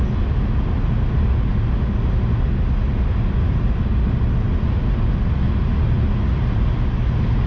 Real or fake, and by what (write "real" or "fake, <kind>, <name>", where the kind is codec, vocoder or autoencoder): real